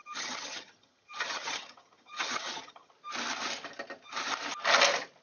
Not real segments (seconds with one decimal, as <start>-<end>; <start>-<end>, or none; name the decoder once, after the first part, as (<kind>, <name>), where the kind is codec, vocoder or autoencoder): 0.0-2.9 (vocoder, HiFi-GAN)